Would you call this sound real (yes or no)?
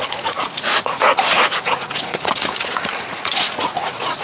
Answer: no